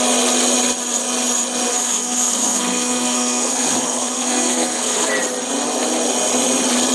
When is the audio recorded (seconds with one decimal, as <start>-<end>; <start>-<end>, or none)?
0.0-1.7; 5.1-6.9

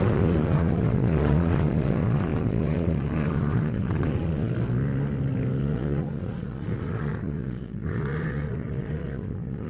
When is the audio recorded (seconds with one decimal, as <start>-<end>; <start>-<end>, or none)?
4.5-5.6

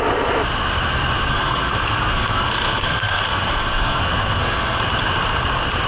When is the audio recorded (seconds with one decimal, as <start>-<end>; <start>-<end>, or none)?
0.0-1.3; 4.8-5.9

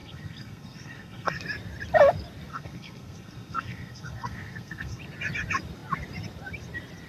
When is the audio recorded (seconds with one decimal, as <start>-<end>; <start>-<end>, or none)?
1.4-2.5; 5.0-7.1

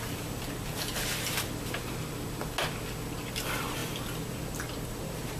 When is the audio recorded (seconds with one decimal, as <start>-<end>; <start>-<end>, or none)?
0.0-5.4